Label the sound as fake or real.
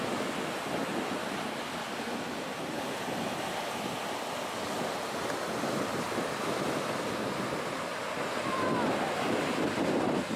real